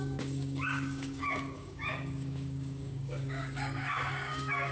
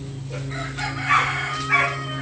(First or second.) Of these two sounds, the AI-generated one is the first